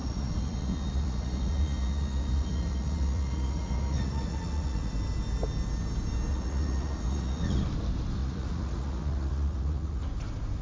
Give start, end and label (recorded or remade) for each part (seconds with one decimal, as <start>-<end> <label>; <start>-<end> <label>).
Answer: 0.0-4.9 remade; 4.9-6.3 recorded; 6.3-7.6 remade; 7.6-8.2 recorded; 8.2-10.0 remade; 10.0-10.6 recorded